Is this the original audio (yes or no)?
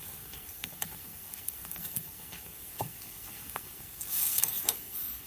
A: no